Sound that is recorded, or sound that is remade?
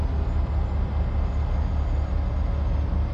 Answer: recorded